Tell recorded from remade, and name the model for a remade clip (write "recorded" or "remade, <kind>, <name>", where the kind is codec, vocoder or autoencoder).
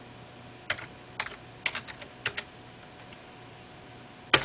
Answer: recorded